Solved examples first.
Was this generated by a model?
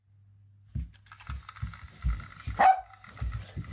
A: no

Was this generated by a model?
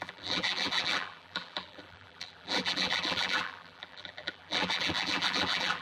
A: yes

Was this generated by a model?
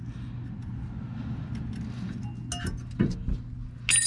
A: no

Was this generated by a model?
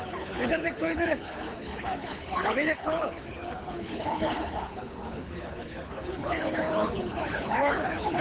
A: yes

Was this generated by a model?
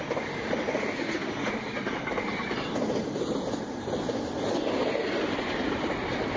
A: no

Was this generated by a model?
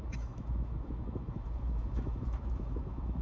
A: yes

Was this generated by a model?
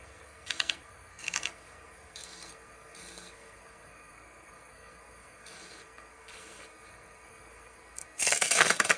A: yes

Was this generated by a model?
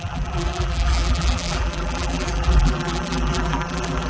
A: yes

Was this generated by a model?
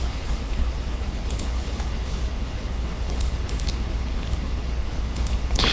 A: yes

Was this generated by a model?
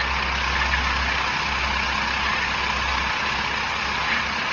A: no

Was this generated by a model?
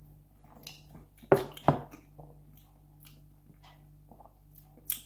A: no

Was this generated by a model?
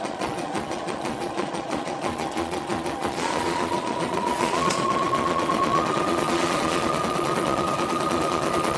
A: yes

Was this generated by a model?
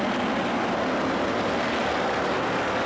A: no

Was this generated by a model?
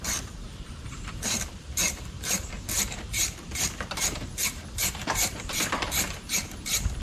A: yes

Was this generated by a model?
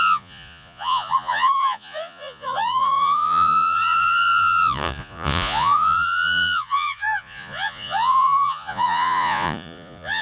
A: yes